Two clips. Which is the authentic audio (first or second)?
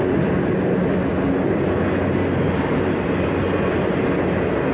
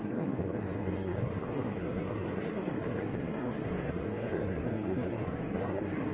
first